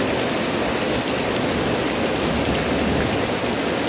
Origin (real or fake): real